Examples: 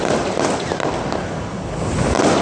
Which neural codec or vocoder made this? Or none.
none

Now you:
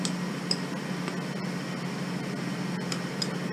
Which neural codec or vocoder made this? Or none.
none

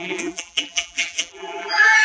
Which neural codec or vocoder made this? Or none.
vocoder, BigVGAN v2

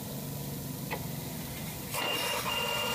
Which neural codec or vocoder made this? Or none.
none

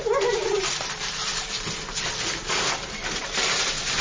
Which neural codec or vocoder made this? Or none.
vocoder, BigVGAN v2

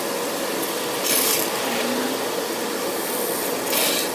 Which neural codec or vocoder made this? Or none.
none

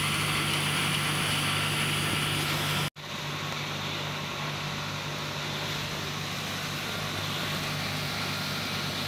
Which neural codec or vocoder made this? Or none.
none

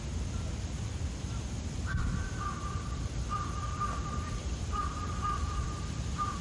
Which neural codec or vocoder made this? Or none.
vocoder, BigVGAN v2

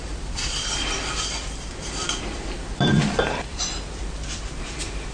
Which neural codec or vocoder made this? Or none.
vocoder, BigVGAN v2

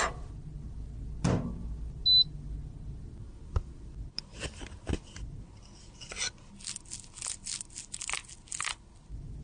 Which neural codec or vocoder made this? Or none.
none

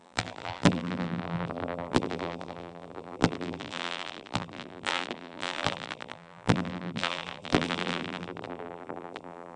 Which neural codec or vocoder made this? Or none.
vocoder, BigVGAN v2